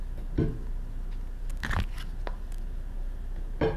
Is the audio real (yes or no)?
yes